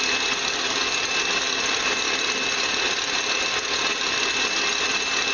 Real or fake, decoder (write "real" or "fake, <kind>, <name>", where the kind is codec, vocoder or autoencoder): real